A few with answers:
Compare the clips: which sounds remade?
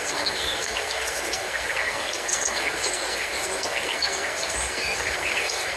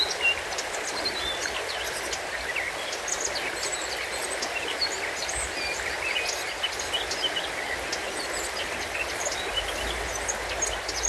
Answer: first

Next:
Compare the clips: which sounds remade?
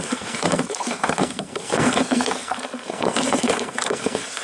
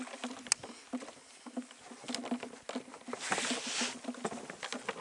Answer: first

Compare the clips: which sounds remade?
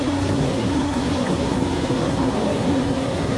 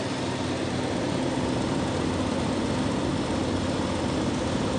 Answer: first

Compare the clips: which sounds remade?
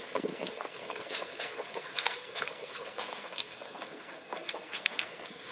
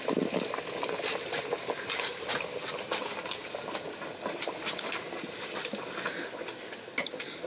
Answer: first